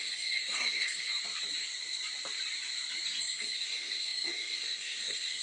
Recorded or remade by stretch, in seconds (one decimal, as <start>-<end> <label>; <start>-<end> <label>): 0.0-1.1 remade; 1.1-3.2 recorded; 3.2-5.4 remade